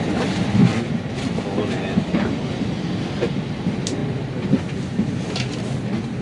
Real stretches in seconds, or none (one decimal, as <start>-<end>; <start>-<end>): 0.0-6.2